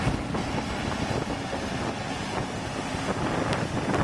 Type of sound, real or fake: real